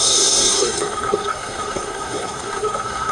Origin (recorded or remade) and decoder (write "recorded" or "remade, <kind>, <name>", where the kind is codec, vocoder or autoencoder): remade, codec, SNAC